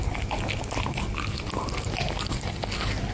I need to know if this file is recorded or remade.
recorded